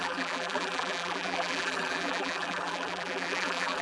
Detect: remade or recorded remade